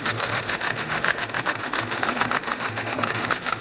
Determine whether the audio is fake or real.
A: fake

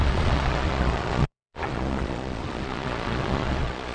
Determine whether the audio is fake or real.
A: fake